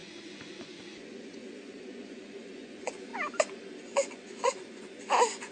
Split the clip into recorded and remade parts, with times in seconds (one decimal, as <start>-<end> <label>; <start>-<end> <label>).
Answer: 0.0-3.1 remade; 3.1-3.8 recorded; 3.8-5.5 remade